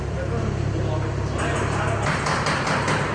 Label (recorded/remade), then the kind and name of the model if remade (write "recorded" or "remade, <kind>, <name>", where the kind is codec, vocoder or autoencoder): recorded